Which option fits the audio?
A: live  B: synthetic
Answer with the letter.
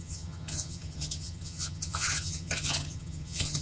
B